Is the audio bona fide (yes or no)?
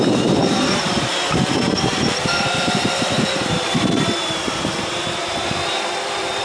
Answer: no